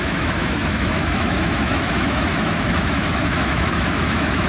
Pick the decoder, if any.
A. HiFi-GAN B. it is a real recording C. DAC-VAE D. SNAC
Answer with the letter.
C